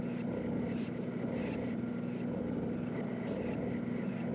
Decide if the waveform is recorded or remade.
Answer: recorded